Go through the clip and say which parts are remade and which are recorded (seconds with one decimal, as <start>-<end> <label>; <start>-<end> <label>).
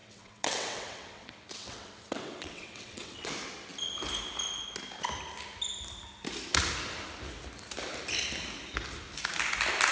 0.0-3.3 remade; 3.3-9.9 recorded